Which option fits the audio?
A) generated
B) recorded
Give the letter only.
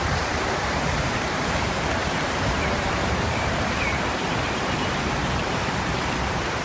A